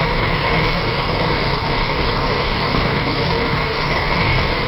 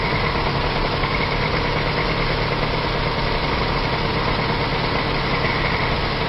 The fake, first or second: first